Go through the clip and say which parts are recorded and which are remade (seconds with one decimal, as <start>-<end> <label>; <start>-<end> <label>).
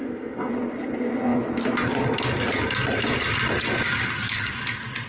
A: 0.0-0.5 remade; 0.5-5.1 recorded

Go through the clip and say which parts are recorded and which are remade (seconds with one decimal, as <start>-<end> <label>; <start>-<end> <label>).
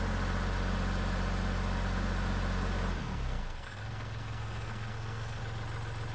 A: 0.0-3.0 recorded; 3.0-5.4 remade; 5.4-6.1 recorded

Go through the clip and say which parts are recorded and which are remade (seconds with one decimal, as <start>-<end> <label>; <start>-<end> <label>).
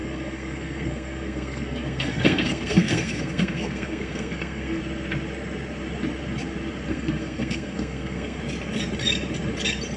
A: 0.0-4.8 remade; 4.8-6.9 recorded; 6.9-8.4 remade; 8.4-10.0 recorded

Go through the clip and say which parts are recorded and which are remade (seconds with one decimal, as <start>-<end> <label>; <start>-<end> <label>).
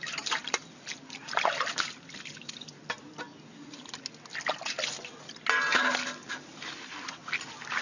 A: 0.0-7.8 recorded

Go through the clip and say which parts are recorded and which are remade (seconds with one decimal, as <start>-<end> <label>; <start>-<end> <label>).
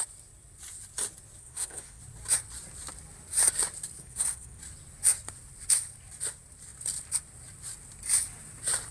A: 0.0-1.4 recorded; 1.4-2.0 remade; 2.0-4.0 recorded; 4.0-4.6 remade; 4.6-8.9 recorded